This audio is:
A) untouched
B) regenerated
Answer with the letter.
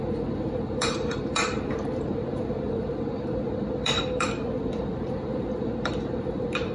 B